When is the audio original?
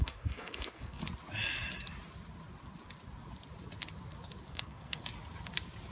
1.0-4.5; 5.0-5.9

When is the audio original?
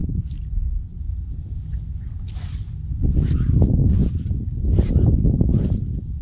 0.0-6.2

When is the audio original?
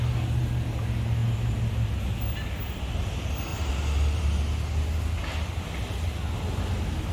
0.0-3.5; 4.2-7.1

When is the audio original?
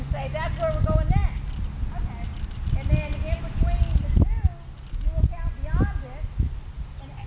0.0-7.3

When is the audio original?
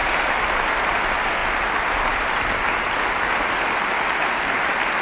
0.0-5.0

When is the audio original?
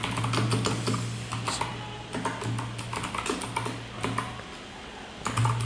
0.0-5.6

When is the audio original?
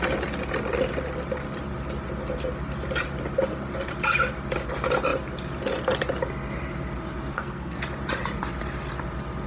0.0-7.3; 7.8-9.5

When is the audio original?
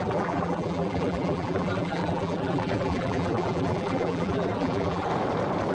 5.1-5.7